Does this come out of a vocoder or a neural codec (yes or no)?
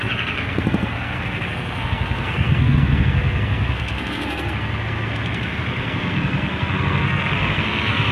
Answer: yes